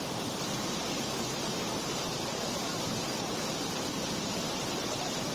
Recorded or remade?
remade